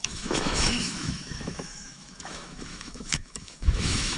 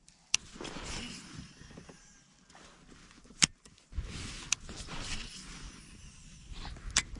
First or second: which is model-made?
first